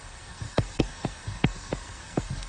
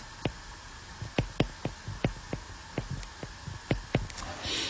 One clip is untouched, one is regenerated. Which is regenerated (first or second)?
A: first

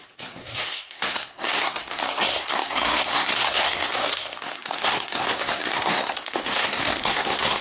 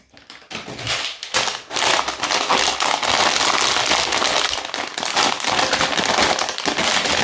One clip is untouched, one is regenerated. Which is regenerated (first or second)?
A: first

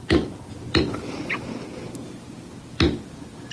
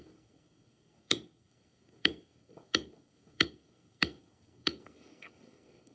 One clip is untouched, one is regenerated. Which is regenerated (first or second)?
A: second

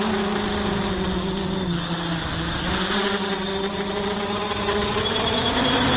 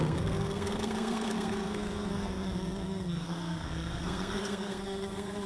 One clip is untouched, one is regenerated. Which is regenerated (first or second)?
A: second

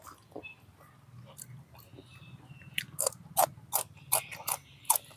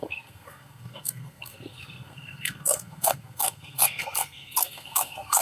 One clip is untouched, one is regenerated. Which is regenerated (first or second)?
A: second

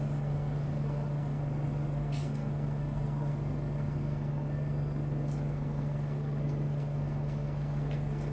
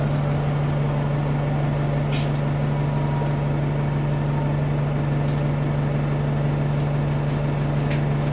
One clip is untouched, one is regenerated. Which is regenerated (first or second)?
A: first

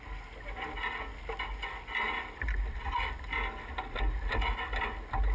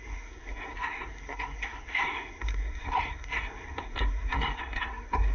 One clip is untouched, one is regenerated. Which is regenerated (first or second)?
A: second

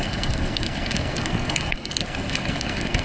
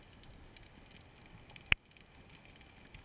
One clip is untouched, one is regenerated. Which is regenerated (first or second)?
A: first